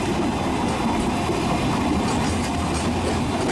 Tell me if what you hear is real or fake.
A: real